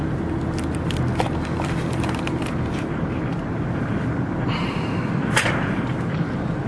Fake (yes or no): no